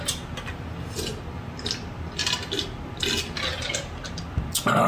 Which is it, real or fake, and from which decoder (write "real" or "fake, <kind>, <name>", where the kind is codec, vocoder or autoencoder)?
real